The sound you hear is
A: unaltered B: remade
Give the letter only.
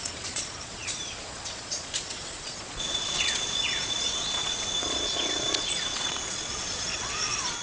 B